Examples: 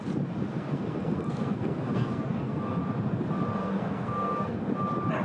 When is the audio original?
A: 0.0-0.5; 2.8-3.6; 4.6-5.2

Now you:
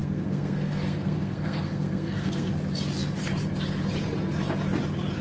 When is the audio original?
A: 2.5-5.2

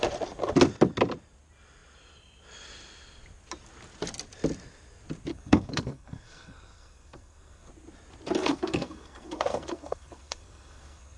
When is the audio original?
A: 0.0-5.3; 7.7-8.4